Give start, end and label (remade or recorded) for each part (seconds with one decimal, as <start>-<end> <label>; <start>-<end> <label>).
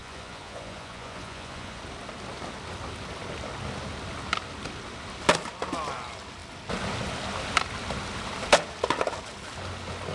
0.0-1.8 remade; 1.8-10.1 recorded